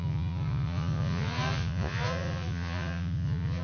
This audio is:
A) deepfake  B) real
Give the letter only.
A